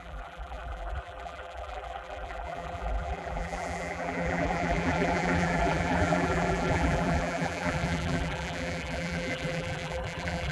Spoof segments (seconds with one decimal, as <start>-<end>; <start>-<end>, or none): 0.0-10.5